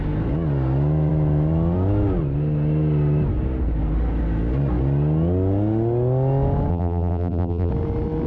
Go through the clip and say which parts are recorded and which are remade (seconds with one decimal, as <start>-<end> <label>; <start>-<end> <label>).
0.0-6.7 recorded; 6.7-7.7 remade; 7.7-8.3 recorded